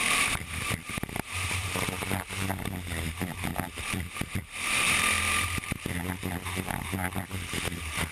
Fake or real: fake